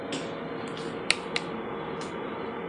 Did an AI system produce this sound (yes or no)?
no